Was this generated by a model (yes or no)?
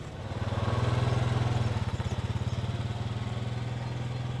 no